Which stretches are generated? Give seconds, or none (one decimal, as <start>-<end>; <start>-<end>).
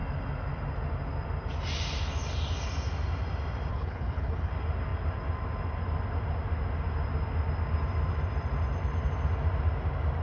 3.7-4.5